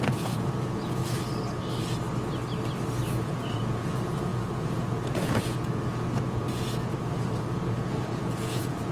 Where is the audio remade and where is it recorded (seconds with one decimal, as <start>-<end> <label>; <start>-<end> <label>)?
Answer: 0.0-1.0 remade; 1.0-3.1 recorded; 3.1-8.9 remade